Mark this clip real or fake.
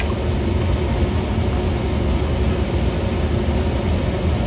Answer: real